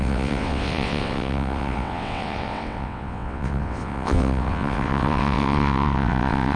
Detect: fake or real fake